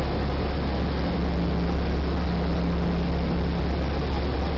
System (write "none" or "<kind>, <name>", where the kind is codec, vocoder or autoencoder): none